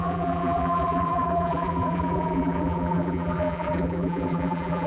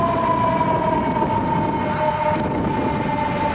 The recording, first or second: second